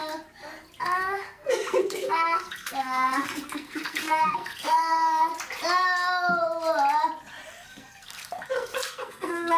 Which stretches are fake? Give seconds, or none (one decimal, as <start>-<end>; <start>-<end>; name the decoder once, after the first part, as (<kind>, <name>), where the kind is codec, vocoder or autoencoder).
0.8-5.3 (codec, SNAC); 7.5-9.6